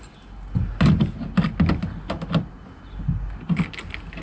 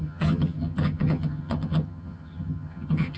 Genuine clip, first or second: first